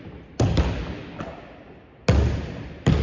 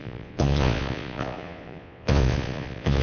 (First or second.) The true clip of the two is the first